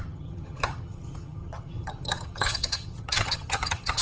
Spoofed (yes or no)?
yes